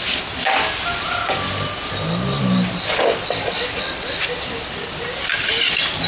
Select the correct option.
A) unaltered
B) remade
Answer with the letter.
A